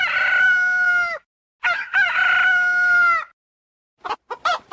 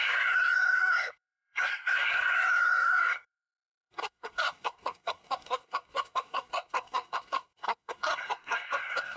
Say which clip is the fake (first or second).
second